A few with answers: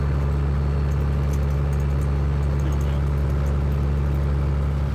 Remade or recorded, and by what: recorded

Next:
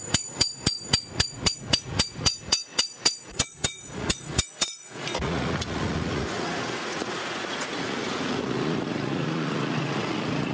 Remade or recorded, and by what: remade, vocoder, Vocos